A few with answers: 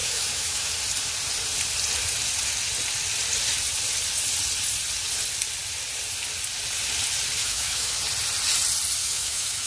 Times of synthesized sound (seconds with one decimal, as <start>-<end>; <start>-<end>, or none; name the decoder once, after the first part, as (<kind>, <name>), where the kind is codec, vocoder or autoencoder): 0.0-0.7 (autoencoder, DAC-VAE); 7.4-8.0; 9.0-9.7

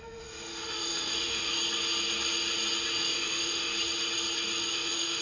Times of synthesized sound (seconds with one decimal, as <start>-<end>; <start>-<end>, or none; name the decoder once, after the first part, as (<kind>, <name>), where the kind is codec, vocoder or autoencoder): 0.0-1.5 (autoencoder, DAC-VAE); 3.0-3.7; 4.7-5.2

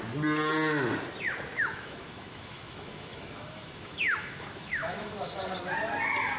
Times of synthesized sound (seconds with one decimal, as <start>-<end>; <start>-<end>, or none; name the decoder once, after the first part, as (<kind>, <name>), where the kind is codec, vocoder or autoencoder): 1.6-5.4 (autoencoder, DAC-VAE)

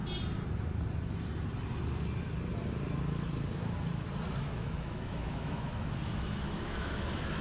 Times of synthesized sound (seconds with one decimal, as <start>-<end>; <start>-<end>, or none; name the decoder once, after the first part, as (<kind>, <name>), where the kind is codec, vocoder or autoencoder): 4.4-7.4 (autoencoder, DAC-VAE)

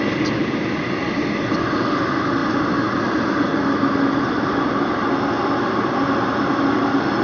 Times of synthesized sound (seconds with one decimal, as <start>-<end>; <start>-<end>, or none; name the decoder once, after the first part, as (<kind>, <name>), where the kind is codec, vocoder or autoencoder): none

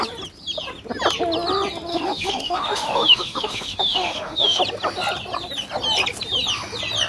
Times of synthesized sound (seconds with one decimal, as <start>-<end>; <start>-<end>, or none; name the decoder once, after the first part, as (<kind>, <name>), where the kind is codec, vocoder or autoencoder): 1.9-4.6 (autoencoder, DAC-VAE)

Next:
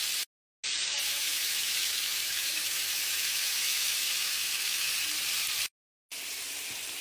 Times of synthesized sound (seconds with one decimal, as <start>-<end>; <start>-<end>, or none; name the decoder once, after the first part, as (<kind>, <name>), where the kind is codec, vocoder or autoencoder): 0.7-4.9 (autoencoder, DAC-VAE)